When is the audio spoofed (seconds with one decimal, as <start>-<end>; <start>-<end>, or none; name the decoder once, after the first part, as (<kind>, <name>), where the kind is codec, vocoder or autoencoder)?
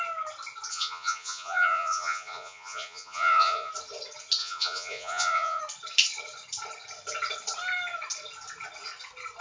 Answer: 0.7-3.7 (vocoder, Vocos); 4.4-5.6